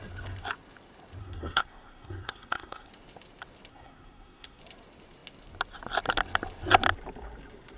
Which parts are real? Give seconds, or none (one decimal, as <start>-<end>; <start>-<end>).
0.0-1.2; 2.9-3.7; 4.6-7.8